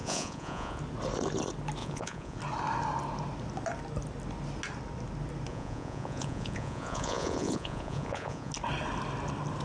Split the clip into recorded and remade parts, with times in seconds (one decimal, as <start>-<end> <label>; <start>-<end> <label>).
0.0-0.8 remade; 0.8-1.8 recorded; 1.8-2.4 remade; 2.4-5.5 recorded; 5.5-8.5 remade; 8.5-9.6 recorded